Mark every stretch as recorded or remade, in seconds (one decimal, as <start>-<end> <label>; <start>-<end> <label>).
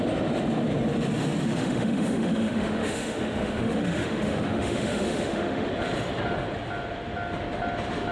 0.0-1.5 recorded; 1.5-5.7 remade; 5.7-8.1 recorded